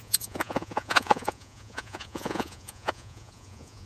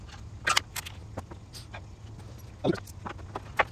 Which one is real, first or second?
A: second